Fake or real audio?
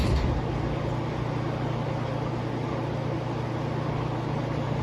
real